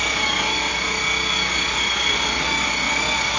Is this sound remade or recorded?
recorded